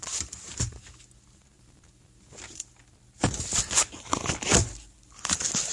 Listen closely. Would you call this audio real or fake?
real